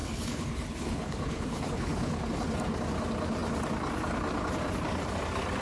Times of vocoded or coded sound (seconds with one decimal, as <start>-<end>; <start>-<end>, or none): 0.0-2.3